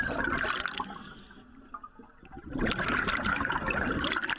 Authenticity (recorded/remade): recorded